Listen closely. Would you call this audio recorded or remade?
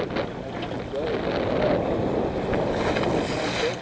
recorded